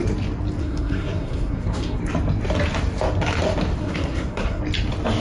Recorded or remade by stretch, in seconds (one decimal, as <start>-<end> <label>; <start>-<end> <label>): 0.0-0.6 recorded; 0.6-2.0 remade; 2.0-3.8 recorded; 3.8-4.6 remade; 4.6-5.2 recorded